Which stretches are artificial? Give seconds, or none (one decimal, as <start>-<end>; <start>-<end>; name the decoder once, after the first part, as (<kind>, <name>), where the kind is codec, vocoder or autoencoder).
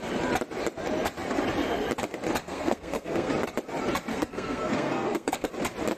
2.4-3.3 (codec, SNAC); 4.1-5.5